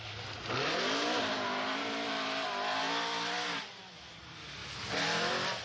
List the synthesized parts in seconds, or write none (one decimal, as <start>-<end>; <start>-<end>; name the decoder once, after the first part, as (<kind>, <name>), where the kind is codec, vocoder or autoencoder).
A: none